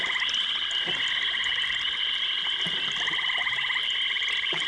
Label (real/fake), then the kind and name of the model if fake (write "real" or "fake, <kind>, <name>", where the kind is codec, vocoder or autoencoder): real